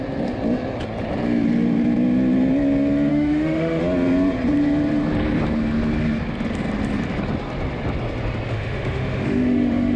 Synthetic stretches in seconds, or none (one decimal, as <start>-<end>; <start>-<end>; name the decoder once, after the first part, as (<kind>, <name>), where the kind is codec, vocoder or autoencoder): 3.1-3.8 (autoencoder, DAC-VAE); 8.5-10.0